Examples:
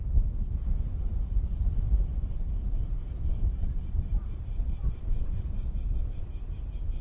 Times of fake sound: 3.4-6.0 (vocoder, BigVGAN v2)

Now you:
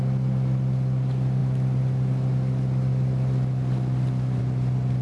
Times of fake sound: none

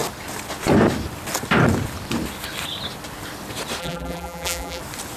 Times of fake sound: 3.8-4.8 (vocoder, BigVGAN v2)